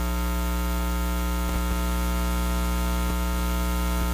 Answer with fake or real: real